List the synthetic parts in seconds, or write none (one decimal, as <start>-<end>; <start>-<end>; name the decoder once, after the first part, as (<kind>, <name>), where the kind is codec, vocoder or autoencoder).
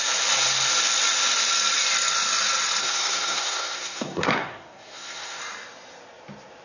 2.8-5.4 (codec, SNAC)